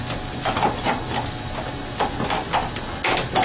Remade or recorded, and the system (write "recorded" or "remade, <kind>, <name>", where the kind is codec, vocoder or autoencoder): recorded